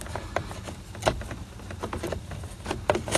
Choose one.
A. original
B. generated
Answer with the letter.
A